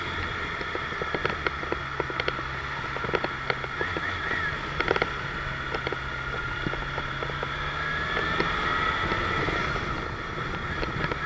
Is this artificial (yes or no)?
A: no